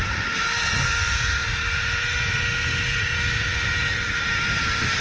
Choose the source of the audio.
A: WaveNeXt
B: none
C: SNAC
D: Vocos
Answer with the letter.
B